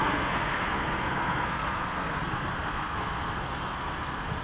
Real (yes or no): no